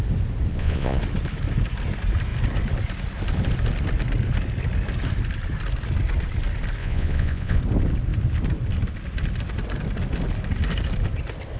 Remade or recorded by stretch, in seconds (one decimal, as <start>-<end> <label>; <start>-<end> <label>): 0.0-0.5 recorded; 0.5-1.0 remade; 1.0-6.8 recorded; 6.8-7.6 remade; 7.6-11.6 recorded

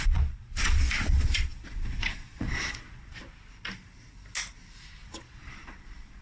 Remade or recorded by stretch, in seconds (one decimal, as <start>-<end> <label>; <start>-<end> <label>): 0.0-3.2 remade; 3.2-5.0 recorded; 5.0-6.2 remade

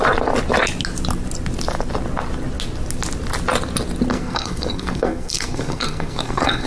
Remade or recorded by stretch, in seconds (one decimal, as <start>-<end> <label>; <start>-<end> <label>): 0.0-4.1 recorded; 4.1-6.7 remade

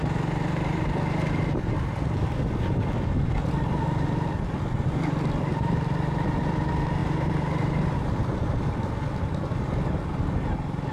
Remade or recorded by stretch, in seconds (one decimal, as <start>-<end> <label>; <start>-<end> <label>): 0.0-5.5 recorded; 5.5-6.5 remade; 6.5-7.0 recorded; 7.0-8.2 remade; 8.2-10.9 recorded

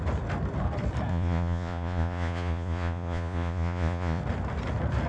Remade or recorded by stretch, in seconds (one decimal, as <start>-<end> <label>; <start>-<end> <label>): 0.0-1.1 recorded; 1.1-4.2 remade; 4.2-5.1 recorded